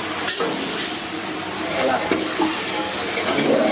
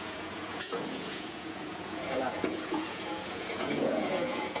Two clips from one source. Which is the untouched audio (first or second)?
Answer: first